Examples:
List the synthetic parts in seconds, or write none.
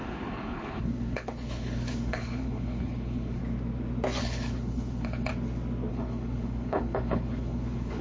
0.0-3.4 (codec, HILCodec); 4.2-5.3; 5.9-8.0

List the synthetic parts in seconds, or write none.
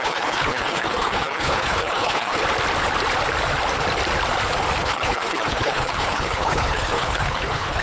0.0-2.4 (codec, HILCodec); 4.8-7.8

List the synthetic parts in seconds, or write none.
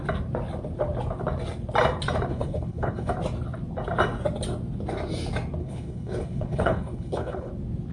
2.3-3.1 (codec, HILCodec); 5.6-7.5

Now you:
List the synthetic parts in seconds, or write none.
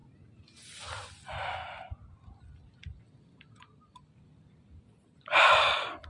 none